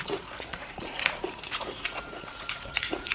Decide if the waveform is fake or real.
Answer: fake